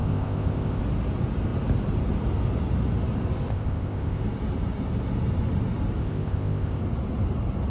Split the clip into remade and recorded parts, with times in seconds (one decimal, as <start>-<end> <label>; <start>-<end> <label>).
0.0-0.8 remade; 0.8-3.5 recorded; 3.5-4.2 remade; 4.2-6.0 recorded; 6.0-6.8 remade; 6.8-7.7 recorded